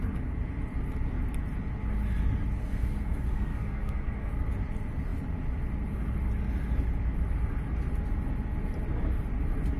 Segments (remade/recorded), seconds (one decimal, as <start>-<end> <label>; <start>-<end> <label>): 0.0-2.6 recorded; 2.6-4.3 remade; 4.3-9.8 recorded